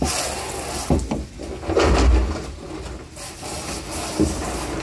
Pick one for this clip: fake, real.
real